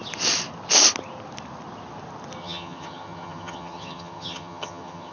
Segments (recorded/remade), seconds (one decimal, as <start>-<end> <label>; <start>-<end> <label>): 0.0-2.4 recorded; 2.4-5.1 remade